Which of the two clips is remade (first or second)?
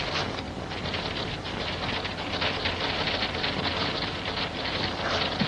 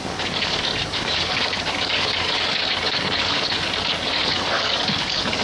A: second